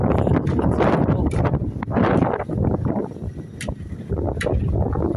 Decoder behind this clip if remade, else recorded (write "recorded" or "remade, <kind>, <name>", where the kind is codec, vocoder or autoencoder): recorded